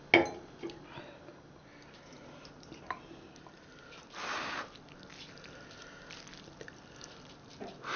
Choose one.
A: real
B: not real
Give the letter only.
A